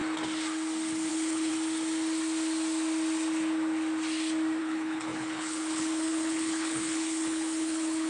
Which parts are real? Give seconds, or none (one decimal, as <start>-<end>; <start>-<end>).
0.0-1.1; 1.5-4.6